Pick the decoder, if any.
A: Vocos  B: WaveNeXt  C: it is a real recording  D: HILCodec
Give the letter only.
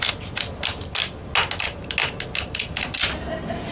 C